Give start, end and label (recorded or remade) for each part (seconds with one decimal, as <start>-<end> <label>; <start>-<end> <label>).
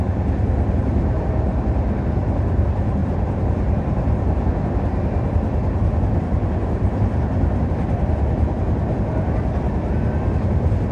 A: 0.0-3.0 recorded; 3.0-4.5 remade; 4.5-6.6 recorded; 6.6-7.7 remade; 7.7-8.8 recorded; 8.8-9.4 remade; 9.4-10.9 recorded